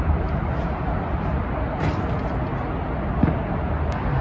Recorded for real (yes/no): yes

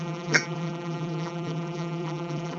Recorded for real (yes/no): no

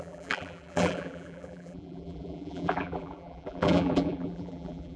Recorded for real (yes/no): no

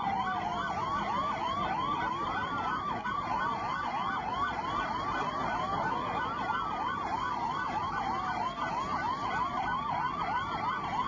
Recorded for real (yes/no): no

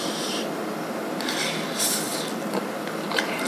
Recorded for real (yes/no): yes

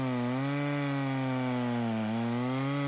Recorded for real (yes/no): yes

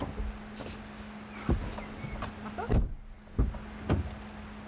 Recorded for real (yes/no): yes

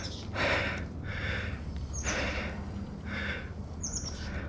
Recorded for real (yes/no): yes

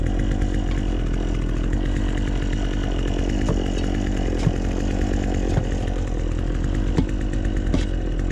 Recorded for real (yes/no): yes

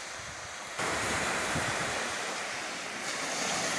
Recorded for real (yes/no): no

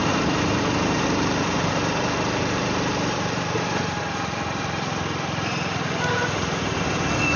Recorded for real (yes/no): no